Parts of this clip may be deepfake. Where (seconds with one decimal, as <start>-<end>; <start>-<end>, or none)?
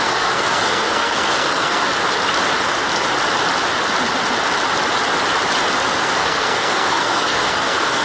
0.0-1.9; 6.0-8.0